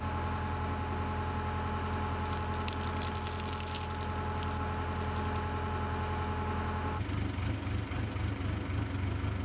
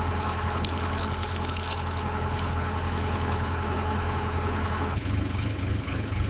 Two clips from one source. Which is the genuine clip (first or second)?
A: first